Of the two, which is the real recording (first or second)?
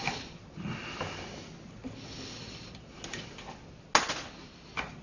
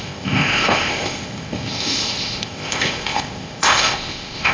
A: first